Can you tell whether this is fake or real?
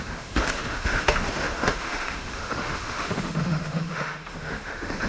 fake